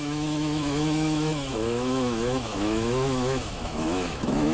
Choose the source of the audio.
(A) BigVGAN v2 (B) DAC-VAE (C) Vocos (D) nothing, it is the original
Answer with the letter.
B